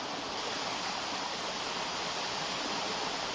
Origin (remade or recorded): recorded